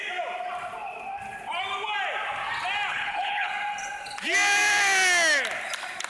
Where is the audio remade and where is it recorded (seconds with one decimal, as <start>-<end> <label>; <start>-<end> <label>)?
0.0-2.9 recorded; 2.9-3.5 remade; 3.5-6.1 recorded